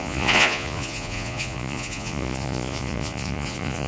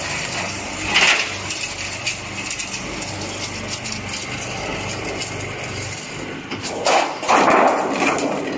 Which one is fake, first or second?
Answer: first